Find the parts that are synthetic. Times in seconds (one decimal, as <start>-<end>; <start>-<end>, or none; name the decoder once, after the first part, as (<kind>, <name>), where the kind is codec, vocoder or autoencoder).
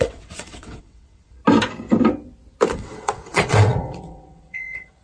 0.0-1.4 (vocoder, WaveNeXt); 2.7-5.0